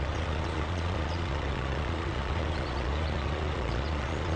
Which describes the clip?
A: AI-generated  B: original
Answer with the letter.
A